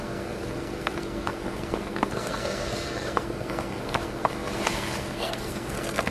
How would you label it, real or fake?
fake